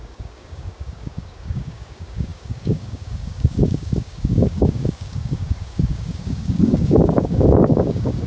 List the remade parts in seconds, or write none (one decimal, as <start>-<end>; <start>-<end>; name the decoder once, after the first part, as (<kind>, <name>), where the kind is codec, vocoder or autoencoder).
0.0-8.3 (codec, DAC)